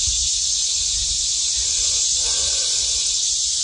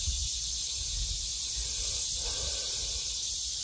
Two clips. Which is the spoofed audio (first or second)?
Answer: first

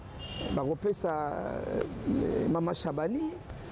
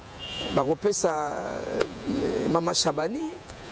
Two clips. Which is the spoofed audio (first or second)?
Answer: second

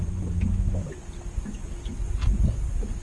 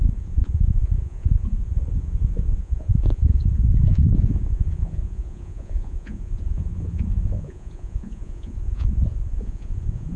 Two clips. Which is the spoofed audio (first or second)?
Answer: second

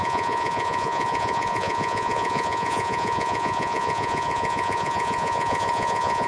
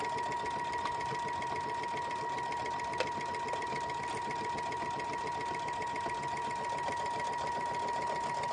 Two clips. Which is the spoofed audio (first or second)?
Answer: first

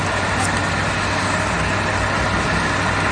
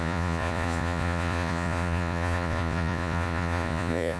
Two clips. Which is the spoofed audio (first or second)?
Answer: second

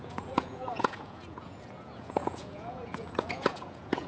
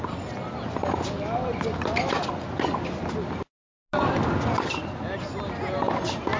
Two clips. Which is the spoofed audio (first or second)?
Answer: first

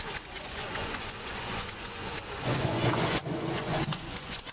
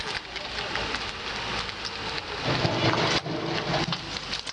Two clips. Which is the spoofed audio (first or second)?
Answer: first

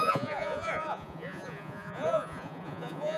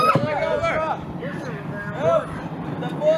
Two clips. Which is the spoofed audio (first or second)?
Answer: first